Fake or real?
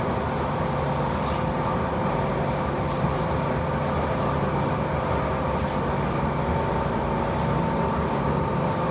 real